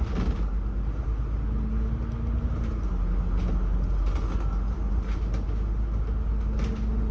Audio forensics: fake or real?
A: real